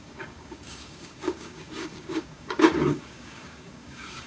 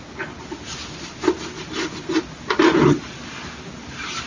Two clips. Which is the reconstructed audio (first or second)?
first